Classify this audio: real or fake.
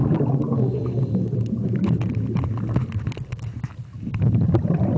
real